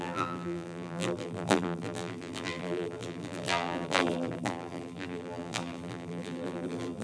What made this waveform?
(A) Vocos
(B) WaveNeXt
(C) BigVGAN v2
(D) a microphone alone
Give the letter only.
C